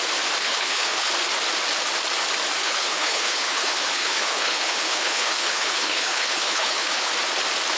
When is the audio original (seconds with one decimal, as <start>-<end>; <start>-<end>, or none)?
0.0-0.4; 1.1-2.6; 7.1-7.8